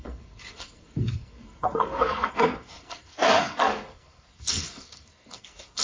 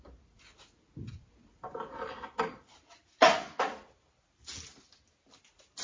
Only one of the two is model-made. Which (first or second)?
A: first